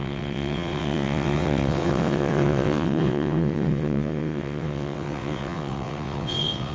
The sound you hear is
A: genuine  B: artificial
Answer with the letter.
B